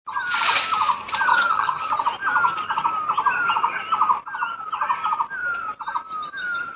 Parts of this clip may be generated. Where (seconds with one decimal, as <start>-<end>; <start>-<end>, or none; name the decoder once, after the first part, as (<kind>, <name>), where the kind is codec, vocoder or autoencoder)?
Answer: 1.3-1.9 (vocoder, HiFi-GAN)